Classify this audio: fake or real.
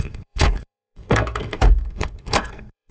fake